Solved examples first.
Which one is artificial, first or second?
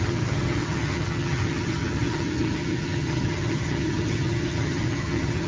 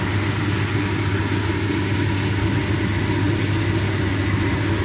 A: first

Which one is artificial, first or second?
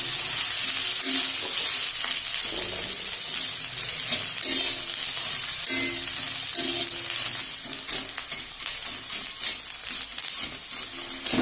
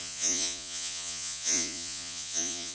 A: second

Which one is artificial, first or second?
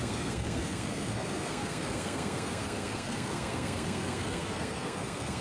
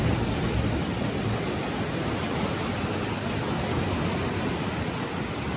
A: first